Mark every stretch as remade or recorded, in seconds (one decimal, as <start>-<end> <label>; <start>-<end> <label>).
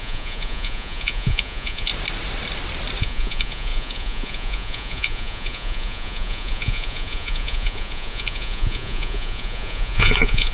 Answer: 0.0-1.9 remade; 1.9-3.0 recorded; 3.0-10.5 remade